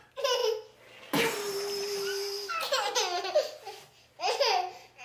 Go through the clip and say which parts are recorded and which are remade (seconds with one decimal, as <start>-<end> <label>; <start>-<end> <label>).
0.0-5.0 recorded